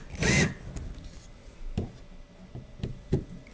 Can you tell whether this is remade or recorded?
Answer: recorded